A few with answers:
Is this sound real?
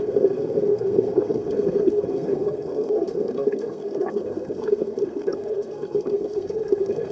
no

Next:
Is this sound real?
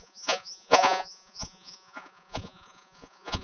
no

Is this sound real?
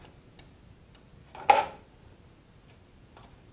yes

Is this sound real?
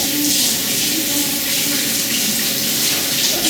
yes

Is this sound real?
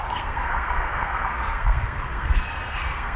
no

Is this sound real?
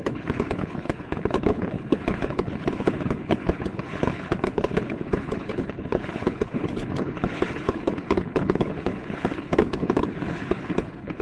no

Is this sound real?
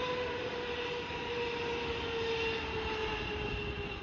yes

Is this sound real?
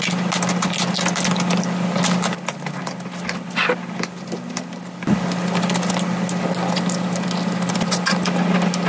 yes